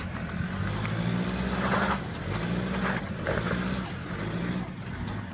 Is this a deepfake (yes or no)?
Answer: no